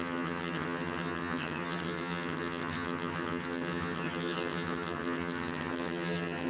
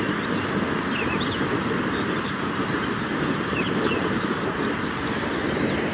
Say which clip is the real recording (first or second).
second